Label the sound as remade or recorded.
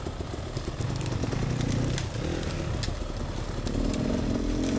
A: recorded